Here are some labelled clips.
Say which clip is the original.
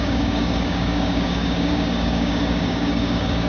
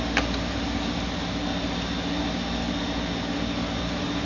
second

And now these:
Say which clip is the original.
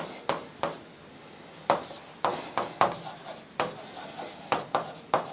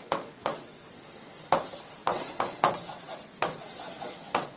first